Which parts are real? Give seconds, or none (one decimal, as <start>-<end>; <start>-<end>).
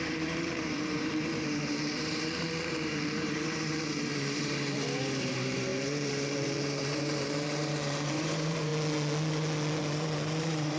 8.7-9.8